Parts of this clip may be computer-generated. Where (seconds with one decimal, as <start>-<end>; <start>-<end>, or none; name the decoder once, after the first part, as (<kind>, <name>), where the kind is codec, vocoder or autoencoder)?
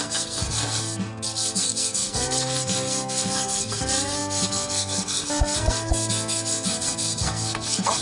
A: 0.0-8.0 (codec, SNAC)